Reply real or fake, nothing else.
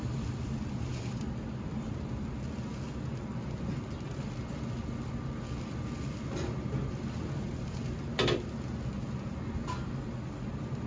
real